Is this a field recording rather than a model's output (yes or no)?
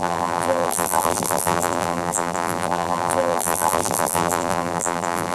no